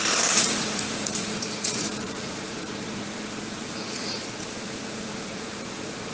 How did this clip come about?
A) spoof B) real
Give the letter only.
A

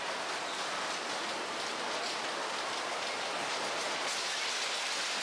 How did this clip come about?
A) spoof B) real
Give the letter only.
B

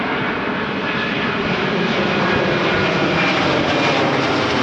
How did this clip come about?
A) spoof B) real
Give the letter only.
B